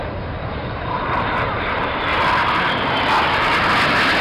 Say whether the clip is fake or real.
real